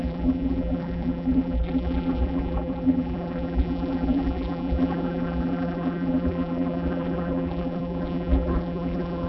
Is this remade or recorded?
remade